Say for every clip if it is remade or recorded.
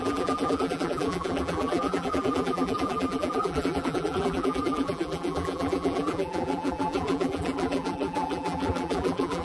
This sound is remade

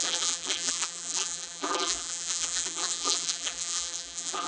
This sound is remade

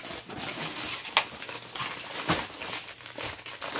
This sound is recorded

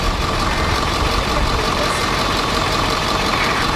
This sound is remade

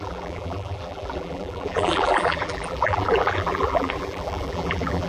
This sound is remade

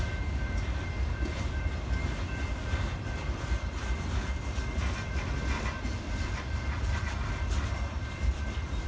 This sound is remade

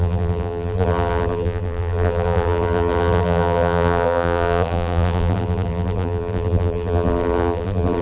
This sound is remade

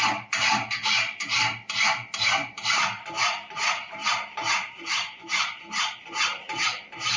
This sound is remade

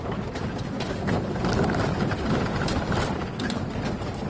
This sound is recorded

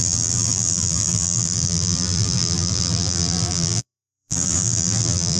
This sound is remade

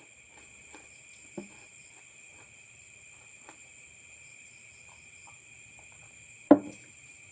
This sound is remade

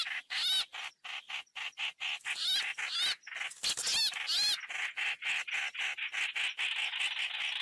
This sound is recorded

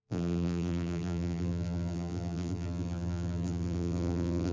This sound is remade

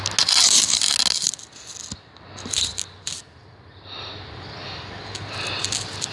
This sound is recorded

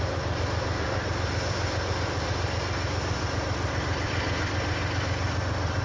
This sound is remade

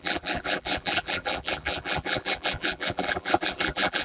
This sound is remade